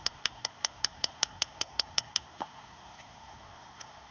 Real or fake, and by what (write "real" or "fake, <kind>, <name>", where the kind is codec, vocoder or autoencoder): fake, codec, SNAC